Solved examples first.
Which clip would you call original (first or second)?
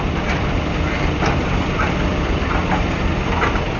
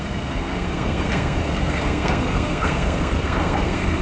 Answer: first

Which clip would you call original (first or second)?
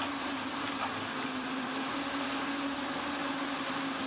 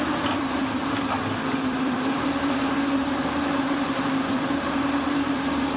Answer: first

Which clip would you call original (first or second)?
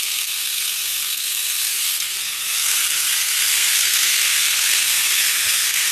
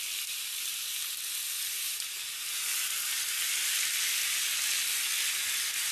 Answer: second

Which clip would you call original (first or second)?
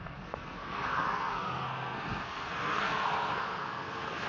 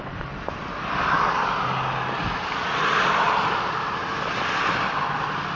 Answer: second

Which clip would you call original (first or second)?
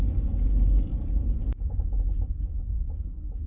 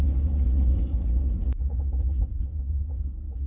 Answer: first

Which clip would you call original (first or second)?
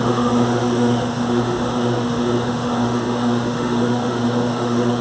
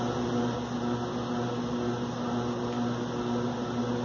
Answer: second